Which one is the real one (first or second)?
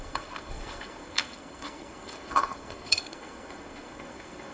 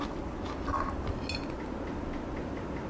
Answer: second